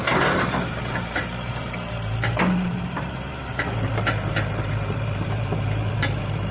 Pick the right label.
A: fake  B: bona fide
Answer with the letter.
A